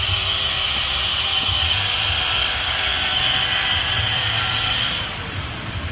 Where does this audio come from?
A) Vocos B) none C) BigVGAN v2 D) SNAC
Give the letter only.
C